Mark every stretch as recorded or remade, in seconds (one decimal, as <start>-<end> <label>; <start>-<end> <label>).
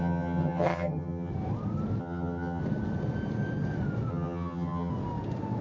0.0-1.3 remade; 1.3-2.0 recorded; 2.0-2.6 remade; 2.6-4.1 recorded; 4.1-4.9 remade; 4.9-5.6 recorded